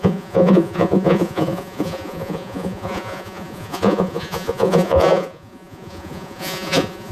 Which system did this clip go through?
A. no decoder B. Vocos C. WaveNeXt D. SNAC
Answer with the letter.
B